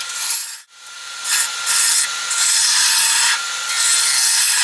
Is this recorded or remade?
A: recorded